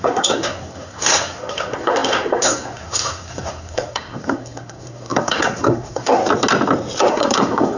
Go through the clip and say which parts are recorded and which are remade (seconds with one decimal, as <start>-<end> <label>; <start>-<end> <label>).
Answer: 0.0-6.2 remade; 6.2-7.1 recorded; 7.1-7.8 remade